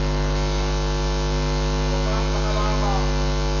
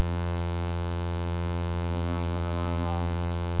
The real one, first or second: first